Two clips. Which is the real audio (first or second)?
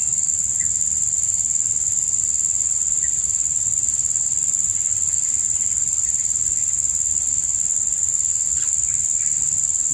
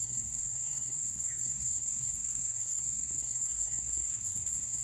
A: first